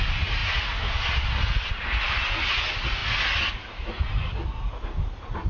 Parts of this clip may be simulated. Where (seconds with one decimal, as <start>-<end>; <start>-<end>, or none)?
none

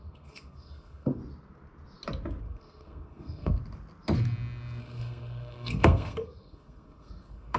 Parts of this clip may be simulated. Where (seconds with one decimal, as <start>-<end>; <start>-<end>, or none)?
0.0-1.2; 2.4-3.6; 4.8-7.6